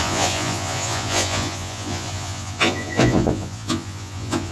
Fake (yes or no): yes